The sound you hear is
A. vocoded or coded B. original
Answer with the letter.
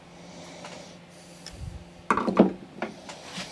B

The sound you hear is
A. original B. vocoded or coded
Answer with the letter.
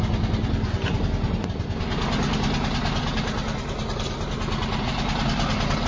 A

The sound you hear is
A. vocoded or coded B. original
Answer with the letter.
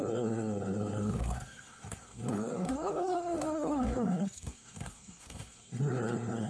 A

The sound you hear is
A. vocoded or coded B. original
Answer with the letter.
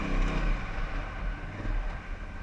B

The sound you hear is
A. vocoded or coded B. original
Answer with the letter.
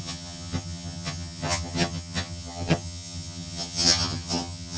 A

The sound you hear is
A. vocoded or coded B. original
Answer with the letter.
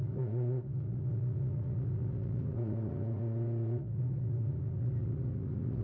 A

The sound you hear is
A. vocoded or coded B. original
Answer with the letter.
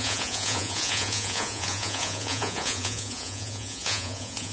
A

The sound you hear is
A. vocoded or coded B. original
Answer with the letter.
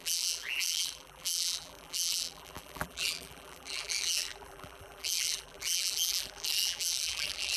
A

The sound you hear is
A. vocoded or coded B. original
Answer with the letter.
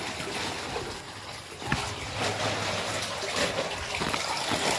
B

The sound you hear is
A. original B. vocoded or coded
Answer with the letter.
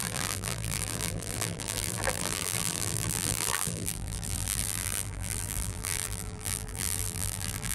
B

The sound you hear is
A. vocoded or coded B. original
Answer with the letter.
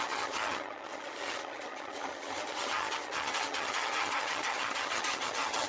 A